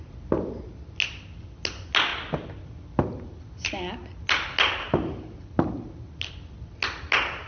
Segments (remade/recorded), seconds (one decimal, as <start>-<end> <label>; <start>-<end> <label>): 0.0-7.5 recorded